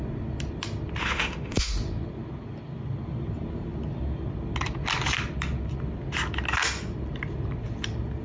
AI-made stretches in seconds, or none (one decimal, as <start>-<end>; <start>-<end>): 1.0-1.7